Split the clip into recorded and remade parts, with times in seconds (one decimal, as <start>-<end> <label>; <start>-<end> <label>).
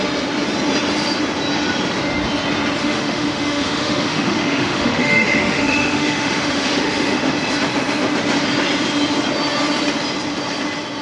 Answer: 0.0-2.8 recorded; 2.8-7.3 remade; 7.3-11.0 recorded